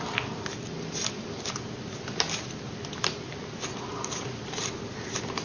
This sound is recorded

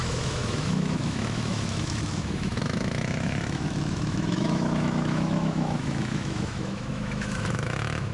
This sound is remade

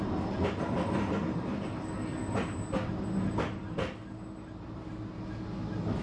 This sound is recorded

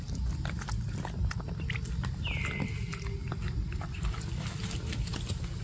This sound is recorded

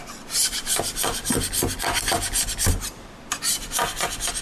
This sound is recorded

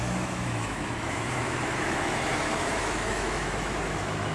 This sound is remade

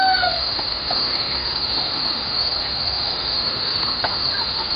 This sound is remade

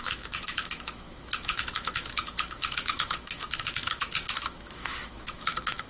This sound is remade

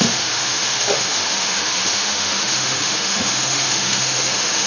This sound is remade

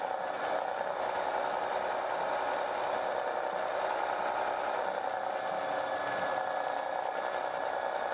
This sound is recorded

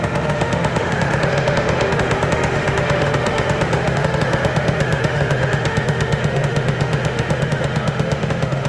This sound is remade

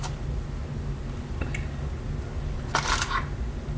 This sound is recorded